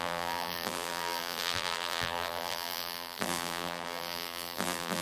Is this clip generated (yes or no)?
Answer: yes